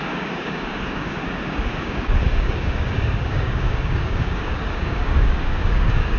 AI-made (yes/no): yes